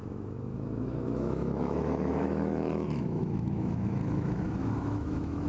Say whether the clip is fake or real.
fake